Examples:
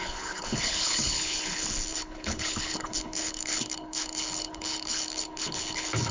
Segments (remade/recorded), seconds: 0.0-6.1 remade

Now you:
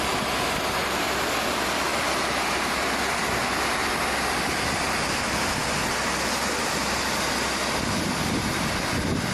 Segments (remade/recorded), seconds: 0.0-1.9 remade; 1.9-3.1 recorded; 3.1-9.3 remade